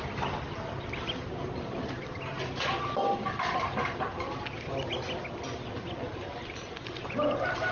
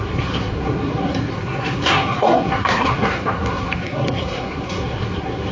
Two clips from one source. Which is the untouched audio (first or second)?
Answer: first